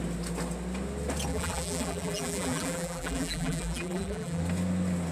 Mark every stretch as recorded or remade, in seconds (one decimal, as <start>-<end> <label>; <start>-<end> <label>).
0.0-1.3 recorded; 1.3-4.4 remade; 4.4-5.1 recorded